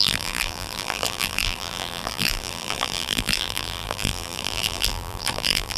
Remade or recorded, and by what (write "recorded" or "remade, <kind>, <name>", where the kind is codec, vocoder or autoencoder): remade, vocoder, BigVGAN v2